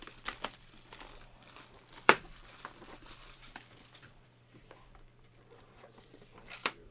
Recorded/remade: remade